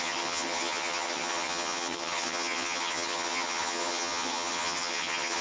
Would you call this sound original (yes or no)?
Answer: no